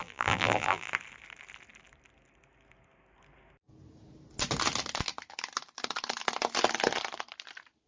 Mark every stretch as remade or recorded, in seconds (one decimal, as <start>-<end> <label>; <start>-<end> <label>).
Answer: 0.0-0.9 remade; 0.9-7.9 recorded